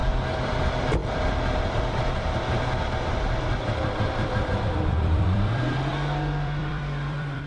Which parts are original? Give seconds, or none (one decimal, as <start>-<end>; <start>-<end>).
none